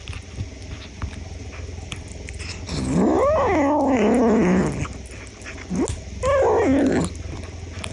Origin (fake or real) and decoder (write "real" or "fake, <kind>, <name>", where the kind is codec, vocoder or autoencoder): real